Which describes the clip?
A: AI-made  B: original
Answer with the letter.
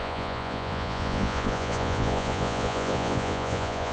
A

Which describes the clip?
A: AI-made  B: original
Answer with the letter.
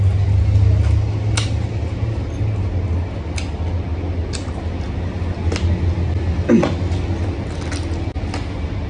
B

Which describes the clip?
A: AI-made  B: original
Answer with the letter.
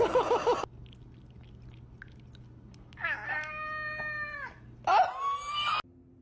B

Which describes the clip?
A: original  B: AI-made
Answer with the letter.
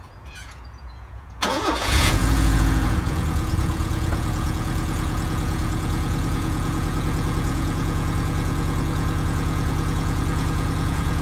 B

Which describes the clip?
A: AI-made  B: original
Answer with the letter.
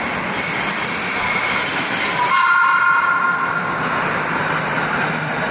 B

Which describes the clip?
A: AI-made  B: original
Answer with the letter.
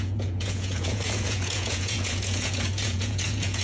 A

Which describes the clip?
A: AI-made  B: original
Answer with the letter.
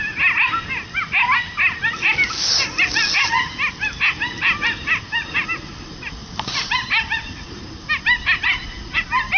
B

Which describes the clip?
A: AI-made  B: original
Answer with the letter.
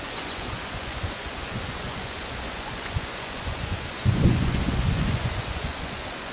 A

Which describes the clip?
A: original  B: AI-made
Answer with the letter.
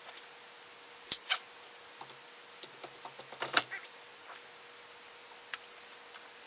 A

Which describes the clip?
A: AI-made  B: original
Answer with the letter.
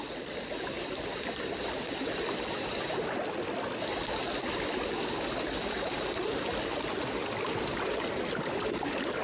B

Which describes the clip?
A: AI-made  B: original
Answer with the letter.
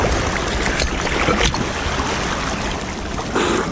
B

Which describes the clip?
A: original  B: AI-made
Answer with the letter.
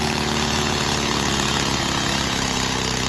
B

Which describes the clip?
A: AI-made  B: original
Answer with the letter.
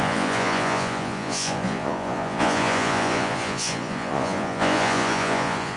A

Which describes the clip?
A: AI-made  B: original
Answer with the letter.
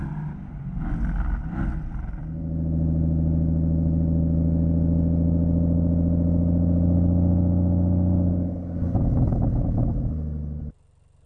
B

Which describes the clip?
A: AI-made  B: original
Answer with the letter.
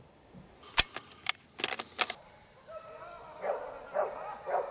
B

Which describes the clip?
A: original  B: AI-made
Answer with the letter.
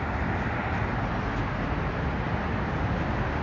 A